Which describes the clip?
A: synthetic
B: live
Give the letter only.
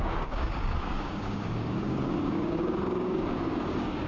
A